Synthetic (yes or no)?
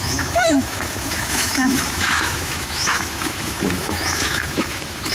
yes